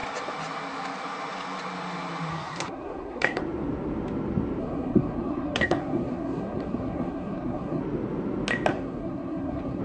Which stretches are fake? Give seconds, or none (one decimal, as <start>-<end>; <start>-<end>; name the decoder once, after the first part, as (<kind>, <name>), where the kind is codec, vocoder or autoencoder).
2.3-3.4 (codec, SNAC); 4.6-7.8; 8.7-9.8